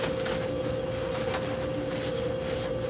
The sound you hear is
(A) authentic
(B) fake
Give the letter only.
A